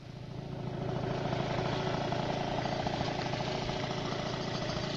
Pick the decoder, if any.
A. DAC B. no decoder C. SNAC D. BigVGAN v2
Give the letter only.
B